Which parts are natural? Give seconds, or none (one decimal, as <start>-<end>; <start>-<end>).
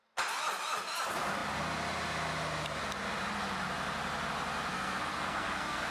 0.0-4.7